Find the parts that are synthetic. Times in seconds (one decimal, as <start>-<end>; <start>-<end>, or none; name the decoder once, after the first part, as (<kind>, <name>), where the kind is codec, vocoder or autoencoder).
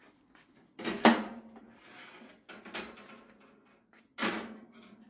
none